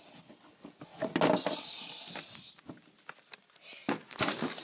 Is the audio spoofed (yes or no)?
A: no